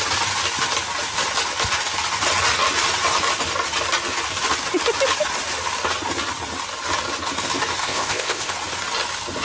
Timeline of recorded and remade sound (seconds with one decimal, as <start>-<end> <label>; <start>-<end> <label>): 0.0-7.8 recorded; 7.8-8.5 remade; 8.5-9.4 recorded